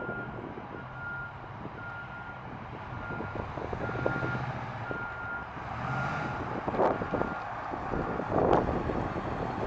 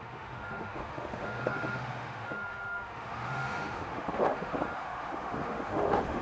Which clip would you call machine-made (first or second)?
second